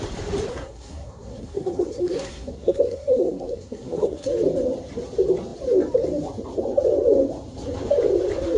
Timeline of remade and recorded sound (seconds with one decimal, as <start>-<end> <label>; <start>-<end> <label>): 0.0-0.5 recorded; 0.5-4.3 remade; 4.3-8.6 recorded